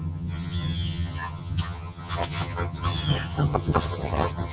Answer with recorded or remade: remade